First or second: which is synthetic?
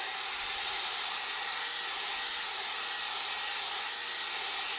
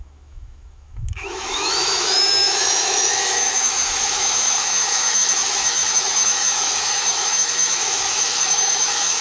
second